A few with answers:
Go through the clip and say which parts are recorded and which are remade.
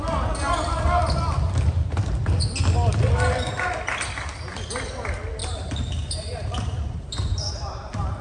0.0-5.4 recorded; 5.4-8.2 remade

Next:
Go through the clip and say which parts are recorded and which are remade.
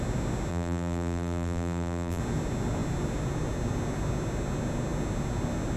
0.0-0.5 recorded; 0.5-2.2 remade; 2.2-5.8 recorded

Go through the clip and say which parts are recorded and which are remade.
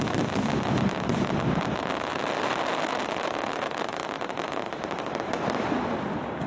0.0-6.5 recorded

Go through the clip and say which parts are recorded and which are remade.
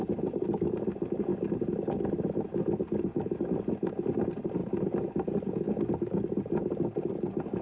0.0-1.3 remade; 1.3-2.0 recorded; 2.0-7.6 remade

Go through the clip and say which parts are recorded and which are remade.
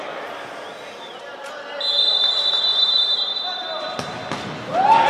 0.0-2.7 recorded; 2.7-3.6 remade; 3.6-5.1 recorded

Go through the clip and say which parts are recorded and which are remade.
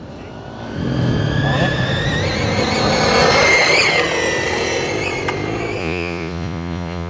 0.0-5.8 recorded; 5.8-7.1 remade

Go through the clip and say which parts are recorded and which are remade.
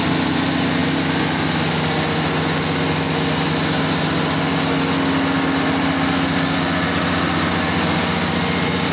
0.0-8.9 recorded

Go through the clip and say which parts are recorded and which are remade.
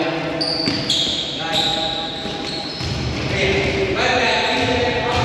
0.0-3.4 recorded; 3.4-4.2 remade; 4.2-5.2 recorded